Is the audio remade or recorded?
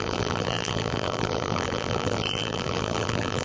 remade